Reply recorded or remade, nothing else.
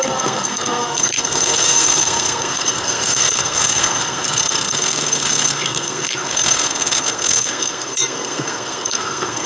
remade